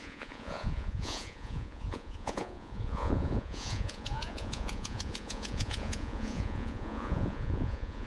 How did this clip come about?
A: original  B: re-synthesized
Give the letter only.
B